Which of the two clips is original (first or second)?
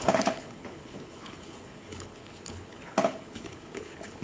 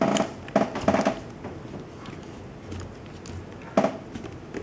second